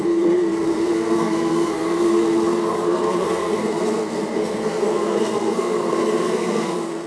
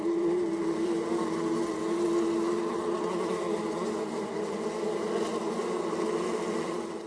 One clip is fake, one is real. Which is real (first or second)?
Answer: second